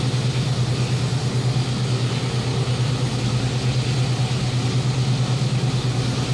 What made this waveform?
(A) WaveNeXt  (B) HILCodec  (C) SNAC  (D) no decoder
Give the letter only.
D